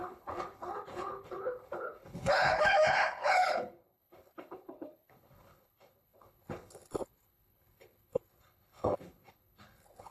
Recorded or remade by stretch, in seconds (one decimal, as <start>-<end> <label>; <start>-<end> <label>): 0.0-10.1 remade